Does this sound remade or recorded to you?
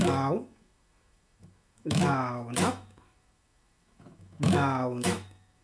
remade